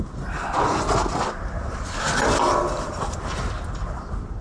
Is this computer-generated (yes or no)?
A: no